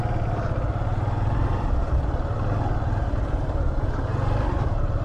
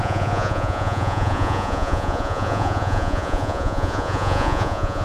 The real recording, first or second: first